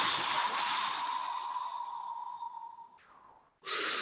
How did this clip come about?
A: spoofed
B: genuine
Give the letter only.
B